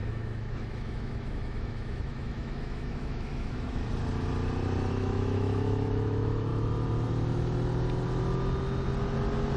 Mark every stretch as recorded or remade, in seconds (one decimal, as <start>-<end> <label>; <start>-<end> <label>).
0.0-3.8 remade; 3.8-4.9 recorded; 4.9-6.5 remade; 6.5-9.6 recorded